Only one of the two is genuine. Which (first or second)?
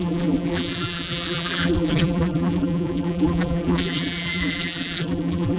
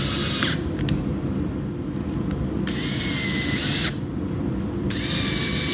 second